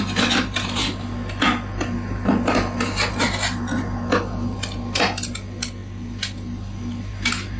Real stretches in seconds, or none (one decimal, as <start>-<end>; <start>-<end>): 0.0-7.6